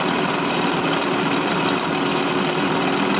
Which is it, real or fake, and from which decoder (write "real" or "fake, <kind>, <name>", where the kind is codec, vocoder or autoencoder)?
real